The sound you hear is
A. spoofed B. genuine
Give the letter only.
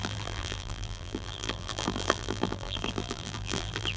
A